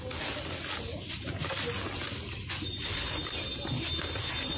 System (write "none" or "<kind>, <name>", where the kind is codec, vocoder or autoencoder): none